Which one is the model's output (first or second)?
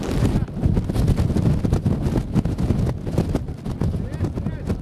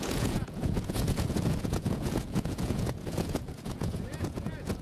second